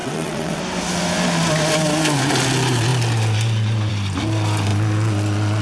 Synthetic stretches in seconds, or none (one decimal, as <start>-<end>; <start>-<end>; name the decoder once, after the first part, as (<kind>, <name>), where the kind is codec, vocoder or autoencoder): 0.0-0.6 (vocoder, WaveNeXt)